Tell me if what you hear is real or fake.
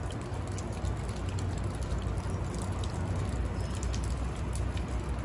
real